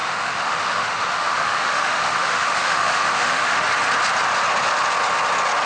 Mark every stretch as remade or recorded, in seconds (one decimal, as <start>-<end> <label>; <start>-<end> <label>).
0.0-3.7 remade; 3.7-5.7 recorded